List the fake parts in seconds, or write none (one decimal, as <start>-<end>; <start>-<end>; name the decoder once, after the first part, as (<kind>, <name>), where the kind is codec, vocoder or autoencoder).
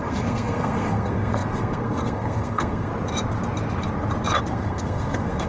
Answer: 0.0-2.9 (codec, SNAC); 4.4-5.5